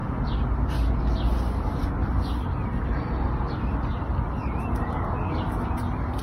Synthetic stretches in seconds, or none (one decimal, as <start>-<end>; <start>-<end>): 4.4-5.0